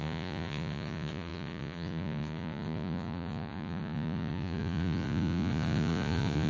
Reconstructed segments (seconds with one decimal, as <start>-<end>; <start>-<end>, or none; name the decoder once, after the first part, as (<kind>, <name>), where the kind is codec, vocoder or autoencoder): 0.0-6.5 (vocoder, Vocos)